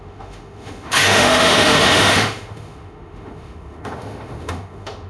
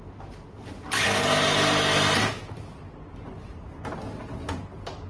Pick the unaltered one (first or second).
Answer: second